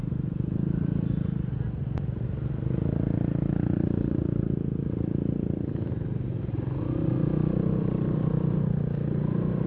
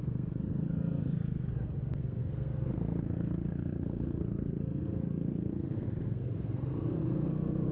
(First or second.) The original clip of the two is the first